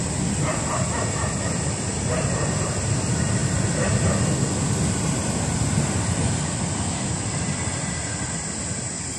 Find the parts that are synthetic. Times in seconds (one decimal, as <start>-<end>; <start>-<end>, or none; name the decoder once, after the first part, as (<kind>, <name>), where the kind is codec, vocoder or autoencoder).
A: none